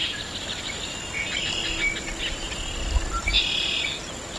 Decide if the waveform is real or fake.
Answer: real